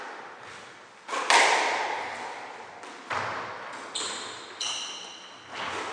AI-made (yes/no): no